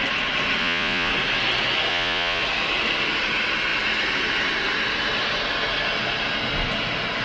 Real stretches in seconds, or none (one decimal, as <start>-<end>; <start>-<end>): 0.0-0.6; 1.1-1.9; 2.4-7.2